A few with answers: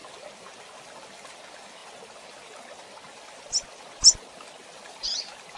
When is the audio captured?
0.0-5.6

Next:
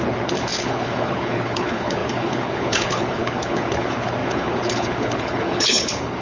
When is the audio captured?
none

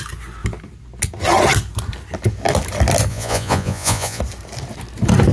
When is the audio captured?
0.0-3.1; 4.2-5.3

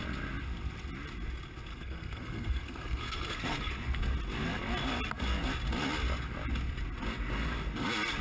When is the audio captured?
0.0-1.7; 3.7-8.2

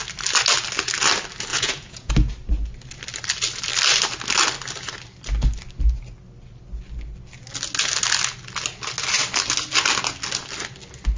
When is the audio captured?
0.0-1.5; 2.1-11.2

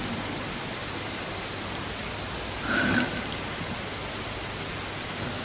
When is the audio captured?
0.0-5.4